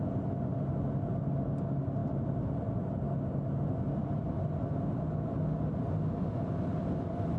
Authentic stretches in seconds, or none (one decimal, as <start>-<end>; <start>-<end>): 0.0-7.4